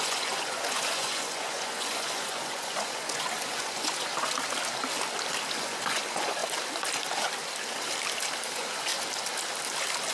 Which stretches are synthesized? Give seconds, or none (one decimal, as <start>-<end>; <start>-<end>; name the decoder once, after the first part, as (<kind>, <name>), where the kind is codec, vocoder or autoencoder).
0.0-4.1 (vocoder, Vocos); 5.5-6.4; 8.5-8.9